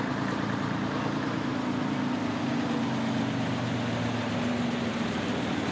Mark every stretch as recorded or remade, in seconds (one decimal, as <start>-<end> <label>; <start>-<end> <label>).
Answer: 0.0-1.5 remade; 1.5-4.9 recorded; 4.9-5.7 remade